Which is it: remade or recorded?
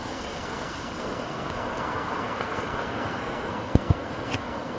remade